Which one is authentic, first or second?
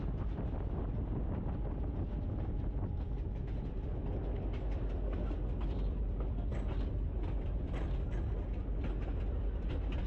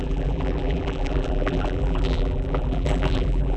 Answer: first